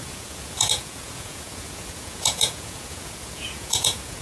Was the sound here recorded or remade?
remade